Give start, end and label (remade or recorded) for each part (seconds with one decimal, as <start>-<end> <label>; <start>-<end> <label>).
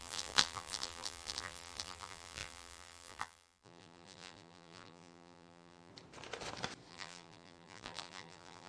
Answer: 0.0-5.9 remade; 5.9-6.9 recorded; 6.9-8.7 remade